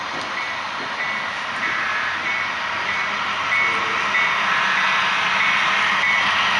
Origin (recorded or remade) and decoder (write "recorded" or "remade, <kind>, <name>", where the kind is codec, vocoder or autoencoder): recorded